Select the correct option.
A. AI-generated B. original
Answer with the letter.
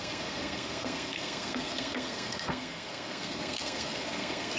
A